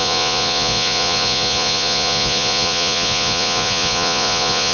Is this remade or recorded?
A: remade